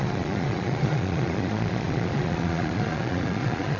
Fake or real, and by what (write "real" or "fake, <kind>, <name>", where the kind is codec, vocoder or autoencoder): fake, vocoder, Vocos